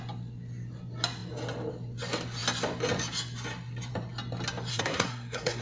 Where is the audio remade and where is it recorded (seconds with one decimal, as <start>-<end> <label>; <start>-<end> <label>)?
0.0-4.7 recorded; 4.7-5.6 remade